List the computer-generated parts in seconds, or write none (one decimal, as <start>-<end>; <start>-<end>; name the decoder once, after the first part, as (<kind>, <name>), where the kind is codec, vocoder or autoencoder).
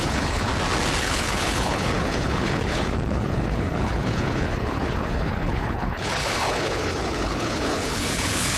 0.0-0.5 (codec, HILCodec); 1.0-8.6